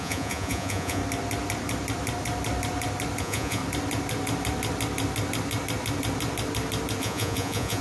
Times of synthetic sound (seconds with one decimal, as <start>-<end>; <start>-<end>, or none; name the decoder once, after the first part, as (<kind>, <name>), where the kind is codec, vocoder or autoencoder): 0.0-1.0 (vocoder, Vocos); 3.2-3.6; 7.0-7.8